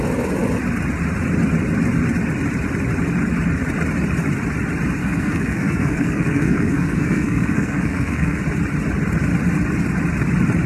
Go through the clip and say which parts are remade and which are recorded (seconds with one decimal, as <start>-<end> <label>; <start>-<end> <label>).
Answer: 0.0-5.0 recorded; 5.0-8.4 remade; 8.4-10.7 recorded